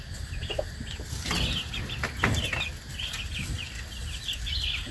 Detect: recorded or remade recorded